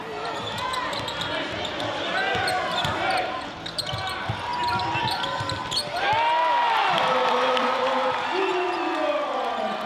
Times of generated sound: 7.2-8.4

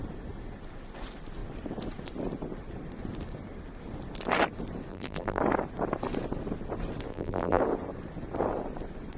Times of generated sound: 4.9-5.4; 7.1-7.6